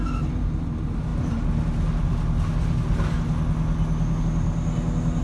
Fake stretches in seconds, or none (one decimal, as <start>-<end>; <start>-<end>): none